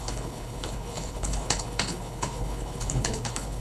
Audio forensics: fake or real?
fake